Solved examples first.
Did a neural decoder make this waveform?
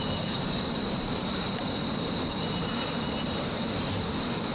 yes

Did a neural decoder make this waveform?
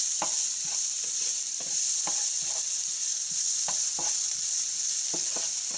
no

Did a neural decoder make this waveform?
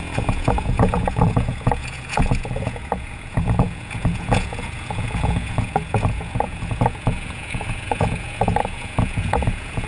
yes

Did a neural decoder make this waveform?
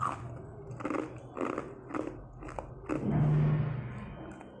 no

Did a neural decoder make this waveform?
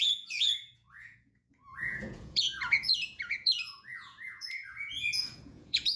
yes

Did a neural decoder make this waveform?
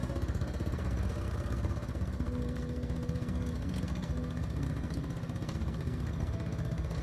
yes